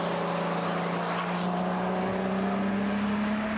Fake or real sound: real